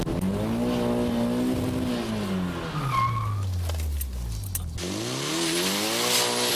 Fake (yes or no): no